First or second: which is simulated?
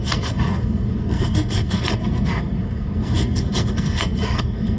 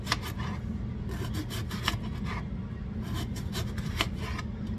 first